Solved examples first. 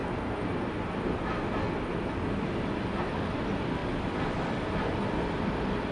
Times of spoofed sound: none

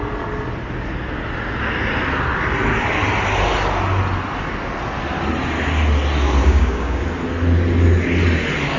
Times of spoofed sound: 6.4-7.0 (codec, DAC)

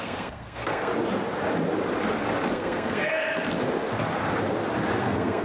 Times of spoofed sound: 0.0-0.9 (codec, SNAC); 2.5-3.3; 5.0-5.4

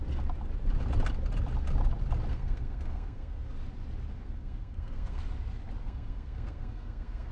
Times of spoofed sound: 2.3-3.5 (codec, SNAC); 4.1-5.2; 5.8-7.3

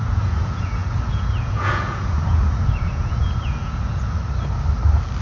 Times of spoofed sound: 0.0-4.2 (vocoder, Vocos)

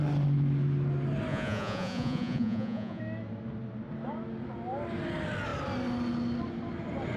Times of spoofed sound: 1.3-3.0 (vocoder, Vocos)

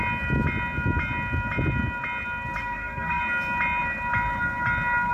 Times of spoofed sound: 2.6-3.2 (codec, SNAC)

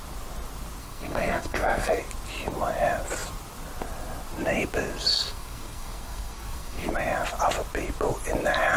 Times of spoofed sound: 0.8-2.0 (codec, SNAC); 5.1-6.9